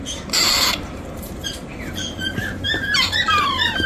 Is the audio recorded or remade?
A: remade